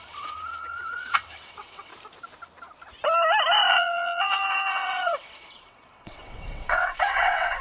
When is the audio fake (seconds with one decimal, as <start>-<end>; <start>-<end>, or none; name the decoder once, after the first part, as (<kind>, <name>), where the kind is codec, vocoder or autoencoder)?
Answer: 0.0-1.9 (vocoder, WaveNeXt); 3.7-7.6